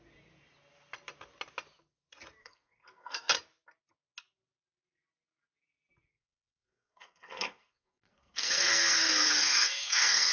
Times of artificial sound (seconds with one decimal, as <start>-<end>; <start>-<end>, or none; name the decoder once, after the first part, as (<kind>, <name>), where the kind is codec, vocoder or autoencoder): 2.4-3.3 (codec, SNAC); 6.1-10.3